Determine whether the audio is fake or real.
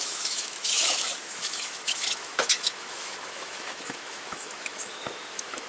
fake